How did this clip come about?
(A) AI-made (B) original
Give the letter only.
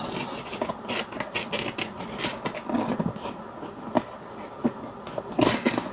B